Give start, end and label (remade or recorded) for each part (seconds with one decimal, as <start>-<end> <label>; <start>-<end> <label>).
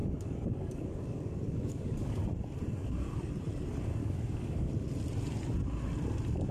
0.0-2.2 remade; 2.2-2.8 recorded; 2.8-3.3 remade; 3.3-4.0 recorded; 4.0-4.7 remade; 4.7-6.5 recorded